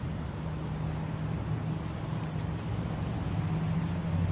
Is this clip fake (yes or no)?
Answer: no